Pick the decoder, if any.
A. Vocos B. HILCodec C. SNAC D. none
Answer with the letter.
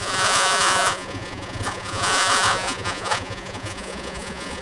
A